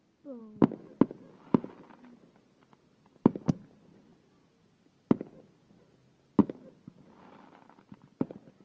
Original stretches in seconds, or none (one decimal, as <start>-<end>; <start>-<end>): 0.0-8.6